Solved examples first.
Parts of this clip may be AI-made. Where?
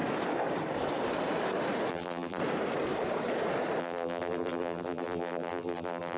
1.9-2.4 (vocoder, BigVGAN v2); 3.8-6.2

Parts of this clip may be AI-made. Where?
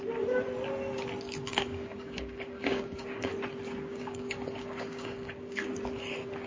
1.5-3.3 (codec, DAC); 3.9-5.7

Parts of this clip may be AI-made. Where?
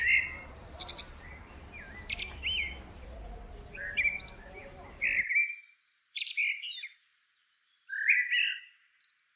0.0-9.4 (vocoder, BigVGAN v2)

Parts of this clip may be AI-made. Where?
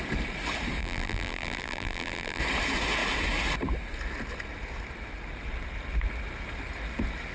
0.8-2.4 (vocoder, BigVGAN v2)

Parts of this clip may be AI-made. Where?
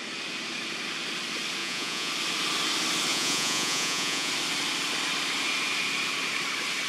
1.6-2.1 (vocoder, Vocos); 3.1-4.3